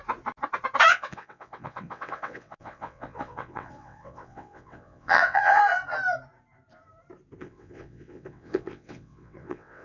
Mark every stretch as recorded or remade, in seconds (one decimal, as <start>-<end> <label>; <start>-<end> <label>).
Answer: 0.0-0.9 recorded; 0.9-5.6 remade; 5.6-7.4 recorded; 7.4-9.8 remade